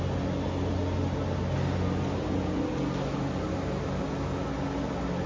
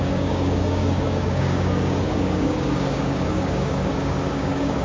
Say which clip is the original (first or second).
first